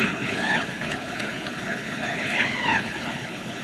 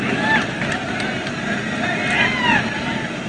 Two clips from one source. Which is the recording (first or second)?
second